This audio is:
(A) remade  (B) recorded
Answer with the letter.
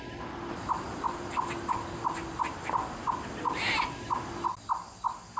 B